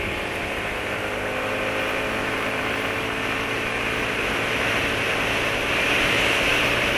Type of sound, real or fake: fake